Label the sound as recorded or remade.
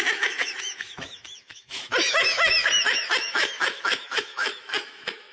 remade